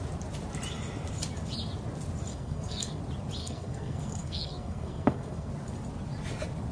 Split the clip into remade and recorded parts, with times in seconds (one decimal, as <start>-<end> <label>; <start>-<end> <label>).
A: 0.0-2.3 recorded; 2.3-3.0 remade; 3.0-3.4 recorded; 3.4-5.5 remade; 5.5-6.7 recorded